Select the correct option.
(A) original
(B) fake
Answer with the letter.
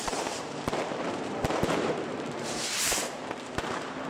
B